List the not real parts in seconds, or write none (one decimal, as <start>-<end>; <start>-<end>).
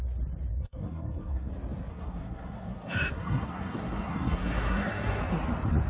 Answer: 0.5-1.5; 1.9-5.2